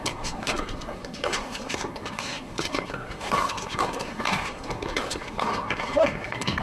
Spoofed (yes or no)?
yes